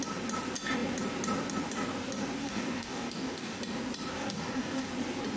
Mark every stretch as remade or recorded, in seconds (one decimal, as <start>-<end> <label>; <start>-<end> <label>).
0.0-2.4 recorded; 2.4-3.6 remade; 3.6-4.2 recorded; 4.2-4.9 remade; 4.9-5.4 recorded